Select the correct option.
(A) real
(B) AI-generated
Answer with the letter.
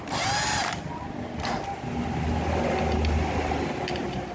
A